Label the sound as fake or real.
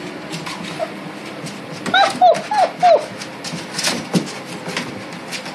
real